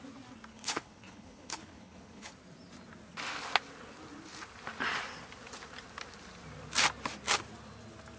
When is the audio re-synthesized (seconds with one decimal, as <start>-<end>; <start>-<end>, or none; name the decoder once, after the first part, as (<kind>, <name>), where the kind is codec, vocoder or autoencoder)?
0.5-2.3 (codec, HILCodec)